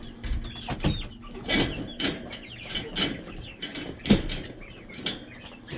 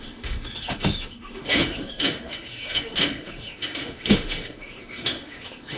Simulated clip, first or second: second